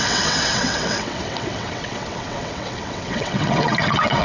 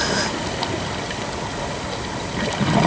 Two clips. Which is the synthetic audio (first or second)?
first